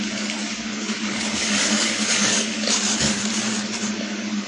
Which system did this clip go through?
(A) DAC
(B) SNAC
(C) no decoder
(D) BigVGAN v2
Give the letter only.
A